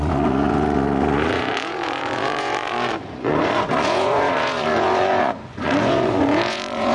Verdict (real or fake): fake